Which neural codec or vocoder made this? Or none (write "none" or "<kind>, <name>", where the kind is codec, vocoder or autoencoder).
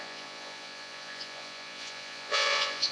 vocoder, Vocos